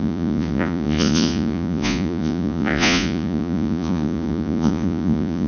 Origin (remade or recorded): remade